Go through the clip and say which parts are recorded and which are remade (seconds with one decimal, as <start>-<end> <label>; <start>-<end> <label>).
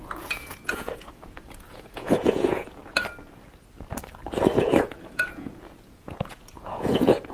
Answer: 0.0-2.8 remade; 2.8-4.6 recorded; 4.6-7.3 remade